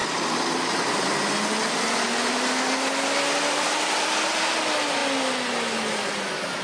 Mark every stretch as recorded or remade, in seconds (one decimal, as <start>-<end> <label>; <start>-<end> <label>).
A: 0.0-6.6 recorded